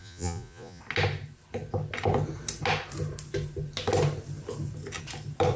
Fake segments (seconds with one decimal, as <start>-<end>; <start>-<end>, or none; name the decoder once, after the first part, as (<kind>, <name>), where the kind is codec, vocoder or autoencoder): 0.0-0.8 (vocoder, Vocos)